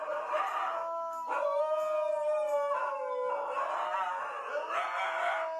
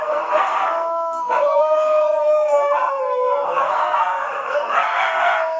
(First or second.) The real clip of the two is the first